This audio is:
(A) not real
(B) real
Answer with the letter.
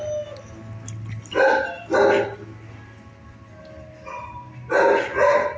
B